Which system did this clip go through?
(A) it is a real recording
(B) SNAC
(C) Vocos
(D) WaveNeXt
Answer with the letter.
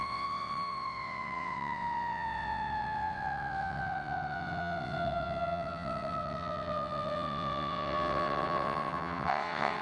D